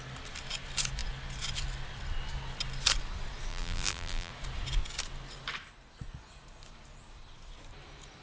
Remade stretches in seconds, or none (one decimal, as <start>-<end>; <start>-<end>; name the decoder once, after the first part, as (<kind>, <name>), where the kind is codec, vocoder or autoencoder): 3.5-4.3 (vocoder, BigVGAN v2)